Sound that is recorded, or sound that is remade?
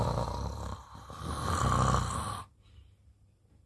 recorded